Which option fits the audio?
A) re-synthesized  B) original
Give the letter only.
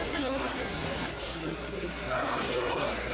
A